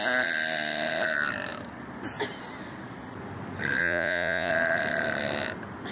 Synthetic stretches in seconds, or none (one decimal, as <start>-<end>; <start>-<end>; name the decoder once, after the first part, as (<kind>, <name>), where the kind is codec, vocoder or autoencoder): 3.8-4.5 (vocoder, Vocos)